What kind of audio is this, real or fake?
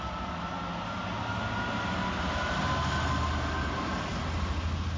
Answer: real